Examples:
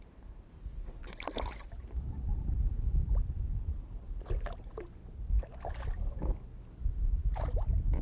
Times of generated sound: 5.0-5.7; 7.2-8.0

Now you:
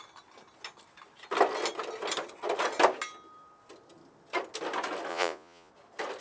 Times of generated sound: 5.1-5.7

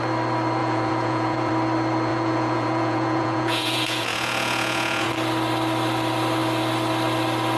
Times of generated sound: 0.6-1.5; 2.1-5.1

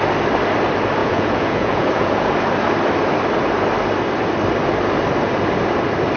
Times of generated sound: 1.0-2.3

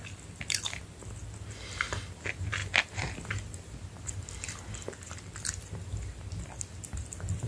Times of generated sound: none

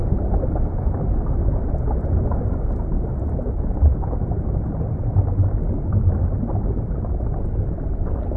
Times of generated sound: none

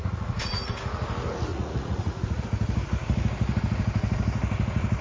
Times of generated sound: 0.0-0.8; 1.5-2.4